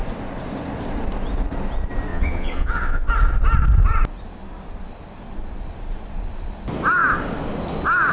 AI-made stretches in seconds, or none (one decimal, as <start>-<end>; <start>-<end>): 2.1-3.1